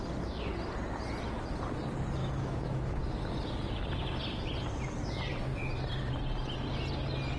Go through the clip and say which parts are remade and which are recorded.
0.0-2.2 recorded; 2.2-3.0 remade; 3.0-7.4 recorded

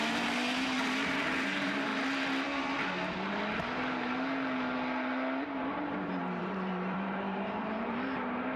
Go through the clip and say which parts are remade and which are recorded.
0.0-1.9 remade; 1.9-6.4 recorded; 6.4-8.6 remade

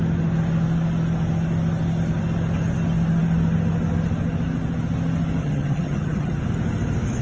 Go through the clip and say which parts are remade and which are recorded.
0.0-5.4 recorded; 5.4-6.4 remade; 6.4-7.2 recorded

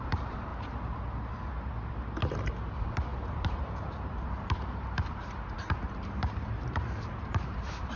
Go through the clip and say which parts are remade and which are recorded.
0.0-0.5 remade; 0.5-2.3 recorded; 2.3-8.0 remade

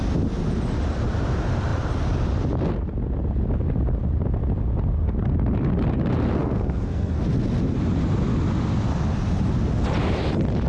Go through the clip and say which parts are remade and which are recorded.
0.0-6.4 recorded; 6.4-7.2 remade; 7.2-10.7 recorded

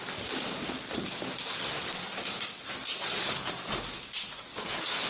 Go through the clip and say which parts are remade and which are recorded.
0.0-2.9 recorded; 2.9-3.5 remade; 3.5-4.5 recorded; 4.5-5.1 remade